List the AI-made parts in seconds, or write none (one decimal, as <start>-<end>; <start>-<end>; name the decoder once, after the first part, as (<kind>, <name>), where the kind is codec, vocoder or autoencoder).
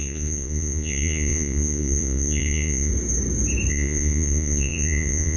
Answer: 0.0-2.9 (vocoder, Vocos); 3.7-5.4